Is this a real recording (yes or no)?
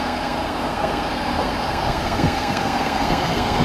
no